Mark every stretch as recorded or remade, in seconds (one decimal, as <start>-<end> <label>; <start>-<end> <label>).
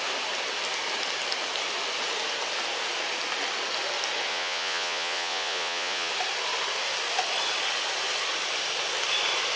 0.0-4.3 recorded; 4.3-6.1 remade; 6.1-9.6 recorded